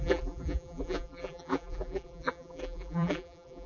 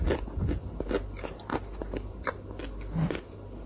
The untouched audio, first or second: second